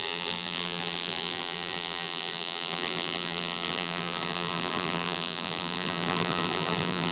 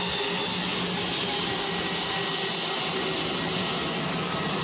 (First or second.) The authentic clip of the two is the second